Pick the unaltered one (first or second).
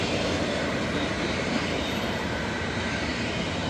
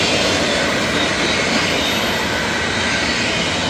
second